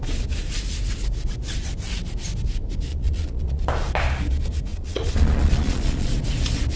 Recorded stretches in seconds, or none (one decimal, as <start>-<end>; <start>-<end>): 0.0-2.9; 3.6-4.7; 6.1-6.8